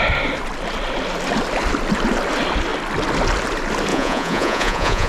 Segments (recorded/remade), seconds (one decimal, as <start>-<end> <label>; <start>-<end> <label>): 0.0-3.9 recorded; 3.9-5.1 remade

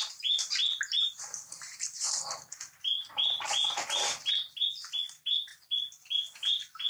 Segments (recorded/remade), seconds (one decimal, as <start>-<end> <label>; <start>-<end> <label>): 0.0-6.9 recorded